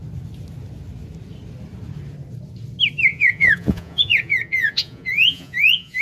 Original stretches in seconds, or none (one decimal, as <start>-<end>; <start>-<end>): 0.0-3.1